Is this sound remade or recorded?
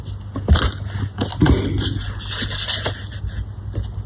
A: recorded